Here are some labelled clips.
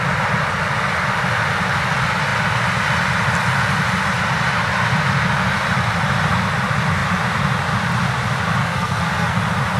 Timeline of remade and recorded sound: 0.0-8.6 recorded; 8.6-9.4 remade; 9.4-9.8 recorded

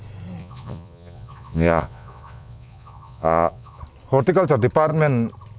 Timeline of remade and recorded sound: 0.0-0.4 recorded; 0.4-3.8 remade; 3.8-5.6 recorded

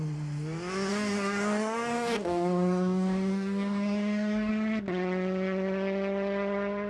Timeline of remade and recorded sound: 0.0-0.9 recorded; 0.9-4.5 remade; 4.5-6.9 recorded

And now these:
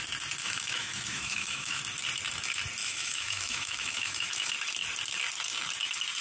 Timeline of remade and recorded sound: 0.0-0.4 recorded; 0.4-1.8 remade; 1.8-2.8 recorded; 2.8-4.5 remade; 4.5-6.2 recorded

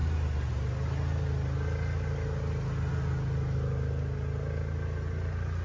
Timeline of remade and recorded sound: 0.0-5.6 recorded

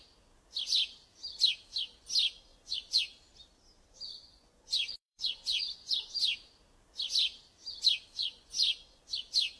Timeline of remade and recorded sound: 0.0-2.5 recorded; 2.5-3.0 remade; 3.0-4.1 recorded; 4.1-6.1 remade; 6.1-8.2 recorded; 8.2-9.0 remade; 9.0-9.6 recorded